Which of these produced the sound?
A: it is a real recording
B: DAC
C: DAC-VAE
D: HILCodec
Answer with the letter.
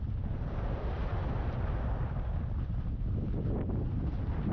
A